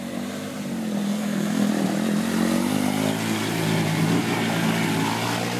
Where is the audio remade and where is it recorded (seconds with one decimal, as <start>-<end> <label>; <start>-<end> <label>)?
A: 0.0-1.1 recorded; 1.1-1.7 remade; 1.7-5.6 recorded